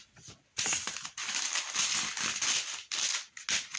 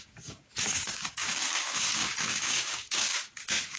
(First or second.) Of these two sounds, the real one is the first